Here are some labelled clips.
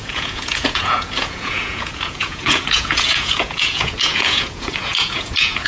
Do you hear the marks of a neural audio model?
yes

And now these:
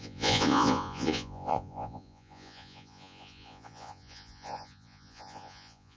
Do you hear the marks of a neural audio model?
yes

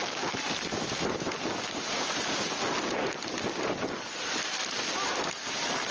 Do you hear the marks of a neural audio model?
no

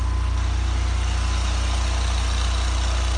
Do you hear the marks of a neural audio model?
no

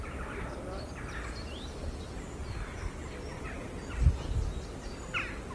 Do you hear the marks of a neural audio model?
no